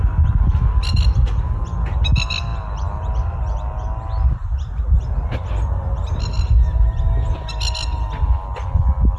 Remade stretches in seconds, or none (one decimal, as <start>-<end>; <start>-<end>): none